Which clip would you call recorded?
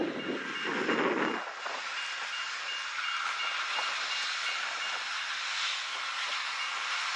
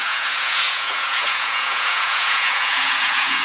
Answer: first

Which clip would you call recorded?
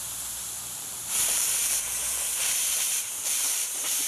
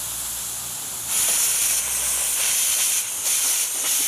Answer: second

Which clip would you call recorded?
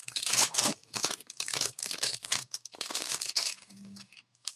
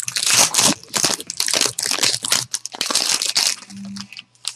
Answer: second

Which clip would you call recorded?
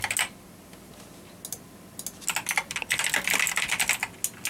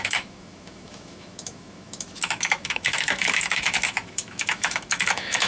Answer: first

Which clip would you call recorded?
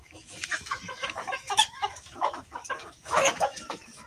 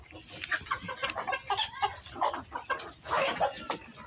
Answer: second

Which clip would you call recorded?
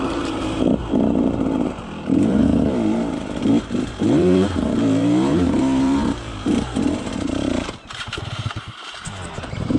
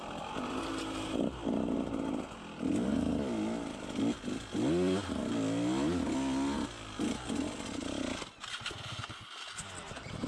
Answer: second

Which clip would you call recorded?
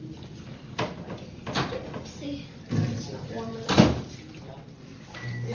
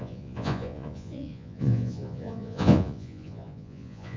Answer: first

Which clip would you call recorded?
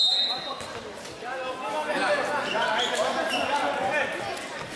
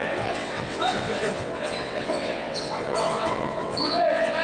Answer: first